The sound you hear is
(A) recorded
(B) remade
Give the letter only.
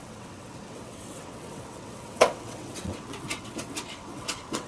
B